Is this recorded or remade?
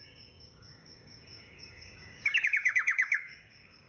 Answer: remade